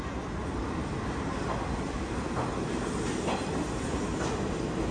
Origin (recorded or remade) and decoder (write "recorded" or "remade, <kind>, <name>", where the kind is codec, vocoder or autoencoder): recorded